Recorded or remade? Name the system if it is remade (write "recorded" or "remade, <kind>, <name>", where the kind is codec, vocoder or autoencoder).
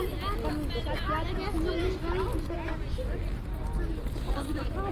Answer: recorded